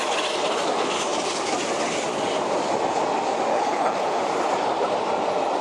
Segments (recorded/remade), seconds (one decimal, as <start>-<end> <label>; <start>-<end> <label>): 0.0-3.5 recorded; 3.5-4.2 remade; 4.2-5.6 recorded